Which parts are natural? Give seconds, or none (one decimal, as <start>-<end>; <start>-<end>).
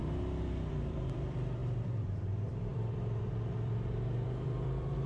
0.0-0.7